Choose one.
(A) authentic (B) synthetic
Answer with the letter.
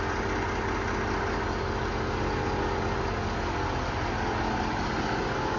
A